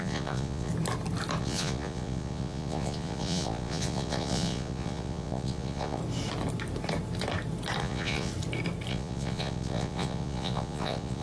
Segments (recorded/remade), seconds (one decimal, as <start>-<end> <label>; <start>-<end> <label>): 0.0-0.7 remade; 0.7-1.4 recorded; 1.4-6.0 remade; 6.0-7.8 recorded; 7.8-8.3 remade; 8.3-8.9 recorded; 8.9-11.2 remade